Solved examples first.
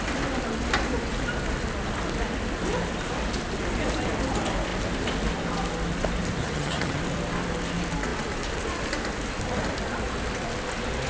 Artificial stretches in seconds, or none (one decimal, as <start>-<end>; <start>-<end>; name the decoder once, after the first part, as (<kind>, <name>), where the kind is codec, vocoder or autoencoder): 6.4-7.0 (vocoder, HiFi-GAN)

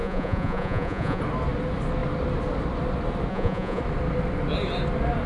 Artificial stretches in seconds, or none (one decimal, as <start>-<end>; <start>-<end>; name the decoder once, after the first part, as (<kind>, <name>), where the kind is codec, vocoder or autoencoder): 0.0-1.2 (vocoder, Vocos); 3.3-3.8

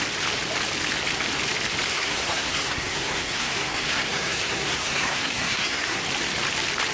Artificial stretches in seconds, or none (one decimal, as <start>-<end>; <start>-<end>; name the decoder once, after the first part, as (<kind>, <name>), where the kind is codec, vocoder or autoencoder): 1.9-6.0 (codec, SNAC)